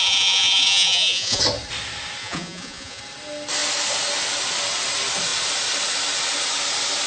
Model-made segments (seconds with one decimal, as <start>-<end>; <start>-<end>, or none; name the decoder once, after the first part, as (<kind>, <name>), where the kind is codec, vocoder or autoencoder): 0.0-1.4 (vocoder, Vocos); 2.2-3.0